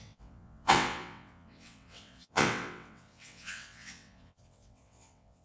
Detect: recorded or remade remade